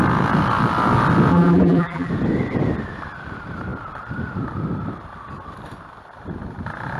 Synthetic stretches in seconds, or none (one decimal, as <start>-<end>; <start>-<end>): 1.3-2.1